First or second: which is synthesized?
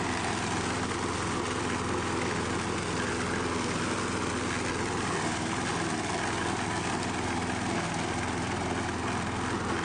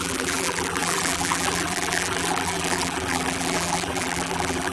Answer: second